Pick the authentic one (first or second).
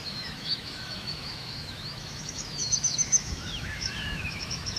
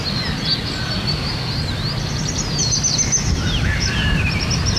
second